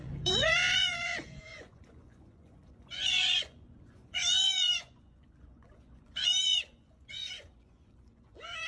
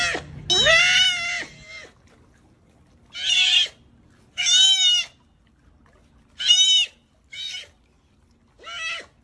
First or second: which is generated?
first